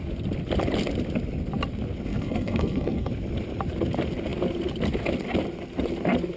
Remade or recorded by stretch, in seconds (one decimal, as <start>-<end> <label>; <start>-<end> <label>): 0.0-2.1 recorded; 2.1-3.1 remade; 3.1-6.4 recorded

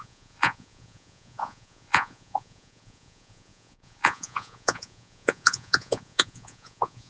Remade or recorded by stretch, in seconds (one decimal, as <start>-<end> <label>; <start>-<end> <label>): 0.0-7.1 remade